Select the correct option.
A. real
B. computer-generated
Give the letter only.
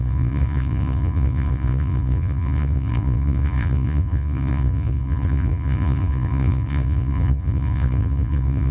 B